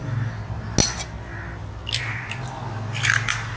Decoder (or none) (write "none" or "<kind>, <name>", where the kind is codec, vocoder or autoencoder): none